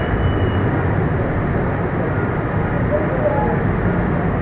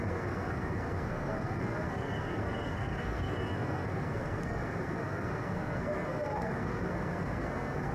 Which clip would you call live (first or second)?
first